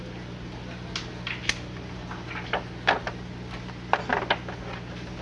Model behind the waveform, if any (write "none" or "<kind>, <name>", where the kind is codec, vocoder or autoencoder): none